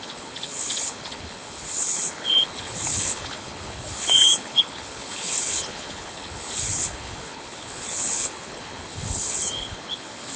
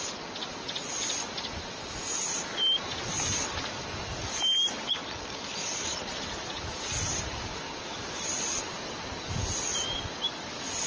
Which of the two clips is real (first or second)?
second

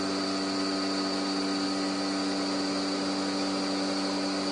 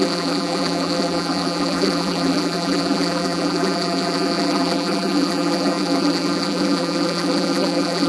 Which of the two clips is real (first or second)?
first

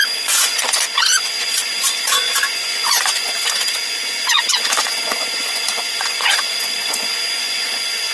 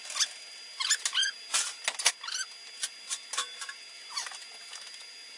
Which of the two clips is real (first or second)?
second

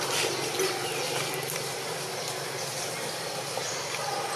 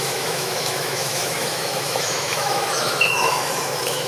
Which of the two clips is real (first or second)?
first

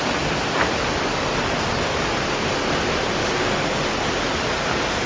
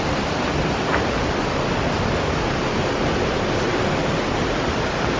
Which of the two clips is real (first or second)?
first